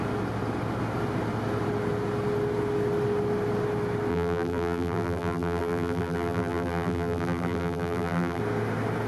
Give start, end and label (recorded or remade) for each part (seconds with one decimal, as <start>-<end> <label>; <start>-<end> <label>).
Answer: 0.0-4.1 recorded; 4.1-8.4 remade; 8.4-9.1 recorded